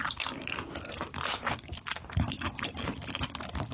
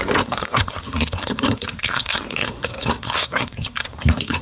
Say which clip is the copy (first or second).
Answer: second